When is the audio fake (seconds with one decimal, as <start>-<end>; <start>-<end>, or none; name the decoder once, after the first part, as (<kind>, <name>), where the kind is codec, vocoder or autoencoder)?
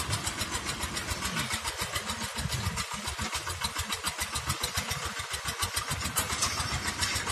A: none